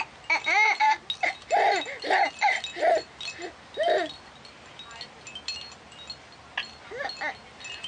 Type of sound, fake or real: real